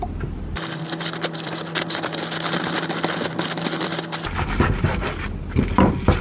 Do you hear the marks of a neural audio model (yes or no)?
yes